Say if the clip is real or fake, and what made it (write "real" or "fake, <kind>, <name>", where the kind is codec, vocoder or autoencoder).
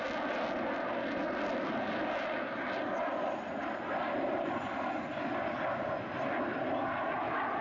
real